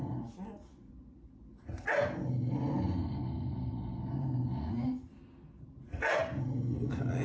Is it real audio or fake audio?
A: real